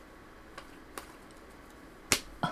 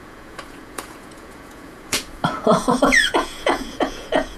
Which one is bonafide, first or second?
first